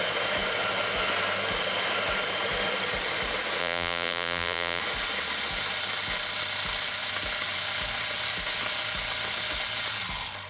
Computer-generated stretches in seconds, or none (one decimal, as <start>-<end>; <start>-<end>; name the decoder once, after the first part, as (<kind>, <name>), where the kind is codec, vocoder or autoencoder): 3.6-4.8 (vocoder, BigVGAN v2)